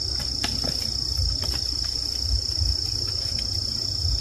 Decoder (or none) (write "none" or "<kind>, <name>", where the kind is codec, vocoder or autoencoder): none